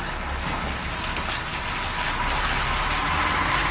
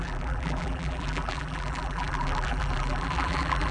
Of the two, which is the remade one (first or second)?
second